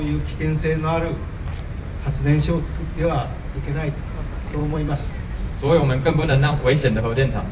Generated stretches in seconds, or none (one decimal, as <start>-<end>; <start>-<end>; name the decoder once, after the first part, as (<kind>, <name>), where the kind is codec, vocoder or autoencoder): 3.2-3.9 (vocoder, BigVGAN v2); 4.6-7.0